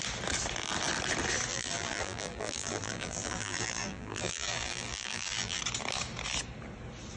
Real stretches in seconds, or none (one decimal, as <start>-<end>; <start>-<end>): 0.0-1.5; 5.6-7.2